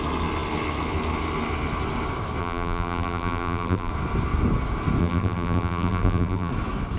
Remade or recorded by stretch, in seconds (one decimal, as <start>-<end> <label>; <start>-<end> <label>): 0.0-2.4 recorded; 2.4-3.9 remade; 3.9-5.0 recorded; 5.0-6.5 remade; 6.5-7.0 recorded